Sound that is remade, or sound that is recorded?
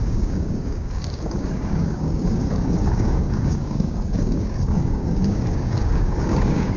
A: remade